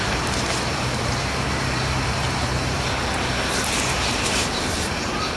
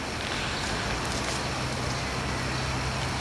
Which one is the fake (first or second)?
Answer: first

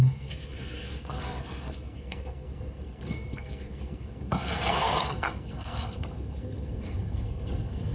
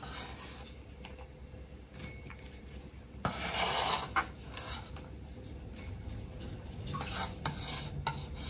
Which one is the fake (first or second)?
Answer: first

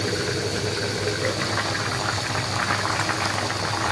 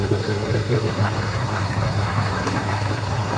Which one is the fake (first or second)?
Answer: second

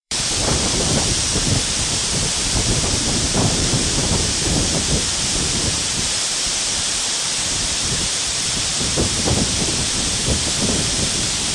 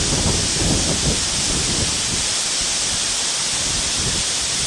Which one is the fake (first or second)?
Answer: first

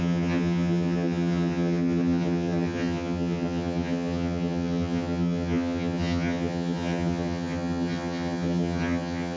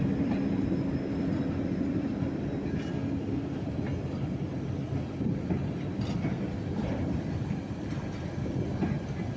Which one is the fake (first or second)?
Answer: first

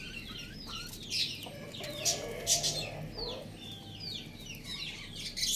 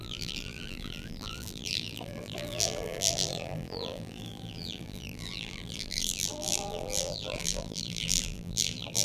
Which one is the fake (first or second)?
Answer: second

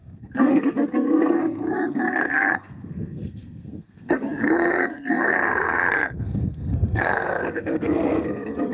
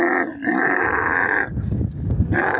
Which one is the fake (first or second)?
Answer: first